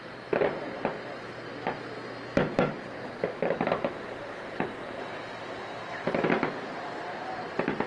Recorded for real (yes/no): yes